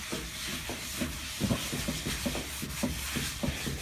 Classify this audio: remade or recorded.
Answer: recorded